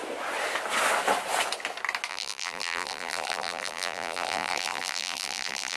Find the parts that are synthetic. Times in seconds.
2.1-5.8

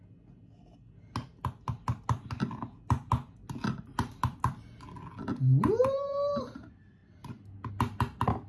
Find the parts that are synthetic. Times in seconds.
none